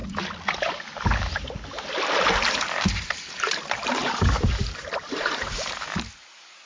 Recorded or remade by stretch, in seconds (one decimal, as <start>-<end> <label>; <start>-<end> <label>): 0.0-2.5 recorded; 2.5-6.7 remade